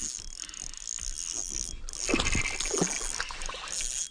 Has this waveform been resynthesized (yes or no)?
no